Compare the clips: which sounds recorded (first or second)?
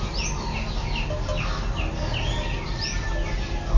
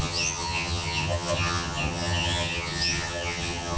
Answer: first